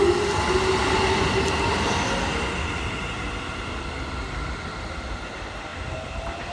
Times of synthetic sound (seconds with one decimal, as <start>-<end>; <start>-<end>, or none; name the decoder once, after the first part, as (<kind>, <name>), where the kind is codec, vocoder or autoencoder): none